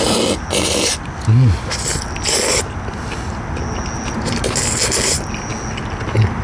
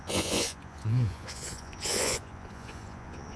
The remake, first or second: second